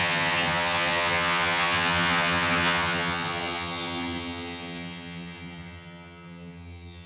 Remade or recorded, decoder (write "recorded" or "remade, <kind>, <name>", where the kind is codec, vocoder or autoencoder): remade, vocoder, HiFi-GAN